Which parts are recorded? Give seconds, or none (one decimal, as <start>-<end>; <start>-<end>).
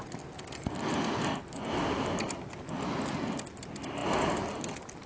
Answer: 0.0-5.1